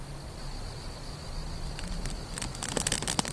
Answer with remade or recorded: recorded